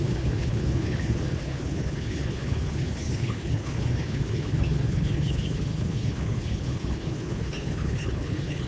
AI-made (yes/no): yes